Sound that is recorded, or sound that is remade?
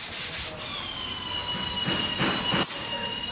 recorded